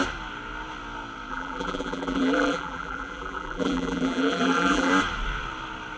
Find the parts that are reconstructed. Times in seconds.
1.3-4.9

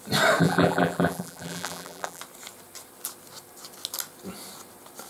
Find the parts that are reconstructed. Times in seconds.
0.4-2.2

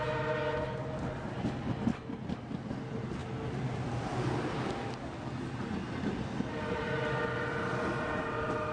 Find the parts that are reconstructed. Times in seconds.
none

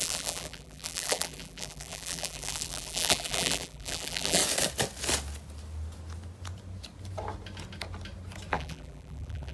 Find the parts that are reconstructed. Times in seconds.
0.0-4.4; 8.5-9.5